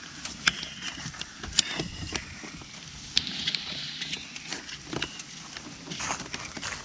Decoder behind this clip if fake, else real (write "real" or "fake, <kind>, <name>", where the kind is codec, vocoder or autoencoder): real